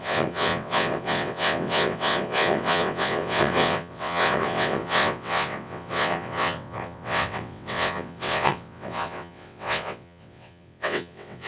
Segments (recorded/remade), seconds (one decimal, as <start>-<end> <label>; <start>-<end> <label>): 0.0-11.5 remade